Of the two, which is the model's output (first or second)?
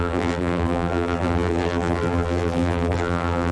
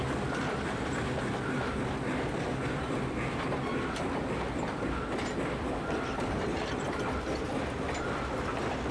first